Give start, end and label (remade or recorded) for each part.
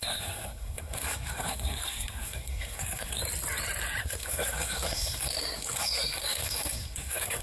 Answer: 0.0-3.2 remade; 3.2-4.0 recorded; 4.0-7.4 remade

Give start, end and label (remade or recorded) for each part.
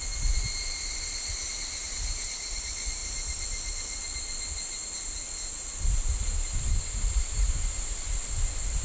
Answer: 0.0-8.8 recorded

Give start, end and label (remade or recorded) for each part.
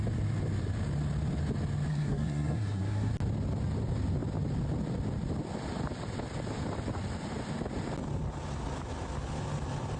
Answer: 0.0-1.9 recorded; 1.9-3.1 remade; 3.1-10.0 recorded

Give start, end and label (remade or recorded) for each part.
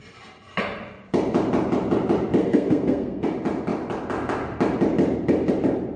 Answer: 0.0-2.4 recorded; 2.4-3.3 remade; 3.3-6.0 recorded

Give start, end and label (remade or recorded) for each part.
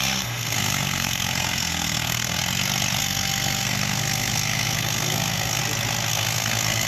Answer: 0.0-2.4 remade; 2.4-3.0 recorded; 3.0-5.6 remade; 5.6-6.1 recorded; 6.1-6.9 remade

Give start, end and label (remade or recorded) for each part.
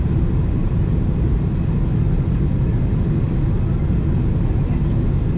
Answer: 0.0-5.4 recorded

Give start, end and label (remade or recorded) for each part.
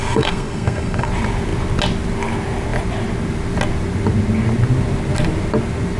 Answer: 0.0-1.1 remade; 1.1-6.0 recorded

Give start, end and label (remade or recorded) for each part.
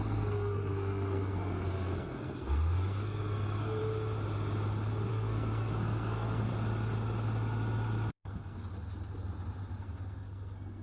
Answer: 0.0-3.8 remade; 3.8-5.1 recorded; 5.1-6.5 remade; 6.5-8.1 recorded; 8.1-8.6 remade; 8.6-9.8 recorded; 9.8-10.8 remade